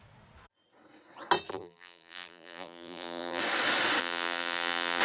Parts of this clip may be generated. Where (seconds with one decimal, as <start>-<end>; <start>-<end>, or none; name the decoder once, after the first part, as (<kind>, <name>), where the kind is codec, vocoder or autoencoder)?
1.5-3.4 (vocoder, BigVGAN v2); 4.0-5.0